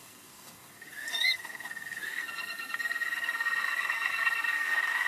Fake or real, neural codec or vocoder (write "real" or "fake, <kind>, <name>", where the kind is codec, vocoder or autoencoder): fake, codec, SNAC